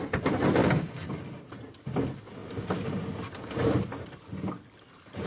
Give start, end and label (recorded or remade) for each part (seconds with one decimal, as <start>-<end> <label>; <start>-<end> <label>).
0.0-0.6 recorded; 0.6-1.1 remade; 1.1-5.3 recorded